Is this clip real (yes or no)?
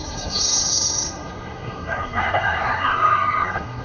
no